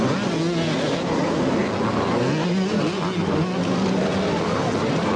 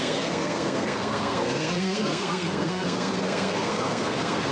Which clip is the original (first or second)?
first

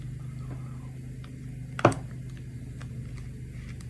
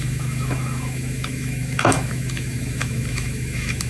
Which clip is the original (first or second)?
first